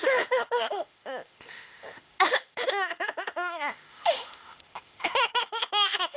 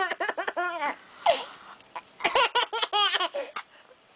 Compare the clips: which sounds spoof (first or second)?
first